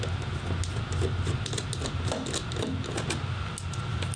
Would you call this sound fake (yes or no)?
no